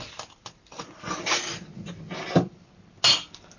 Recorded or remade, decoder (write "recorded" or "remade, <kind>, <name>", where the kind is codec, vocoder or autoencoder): recorded